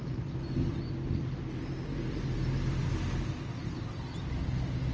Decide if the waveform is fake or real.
real